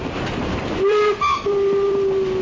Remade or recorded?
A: remade